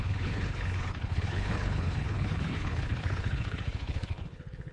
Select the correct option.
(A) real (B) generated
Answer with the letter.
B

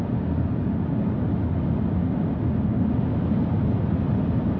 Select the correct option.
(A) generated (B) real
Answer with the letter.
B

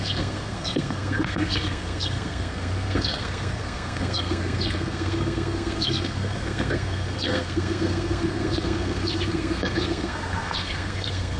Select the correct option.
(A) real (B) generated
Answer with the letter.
B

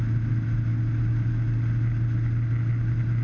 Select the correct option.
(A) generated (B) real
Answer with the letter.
B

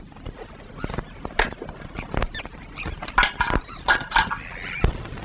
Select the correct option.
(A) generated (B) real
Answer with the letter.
B